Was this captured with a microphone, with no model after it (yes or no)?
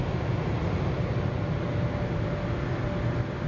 yes